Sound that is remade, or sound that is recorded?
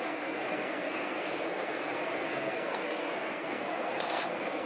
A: remade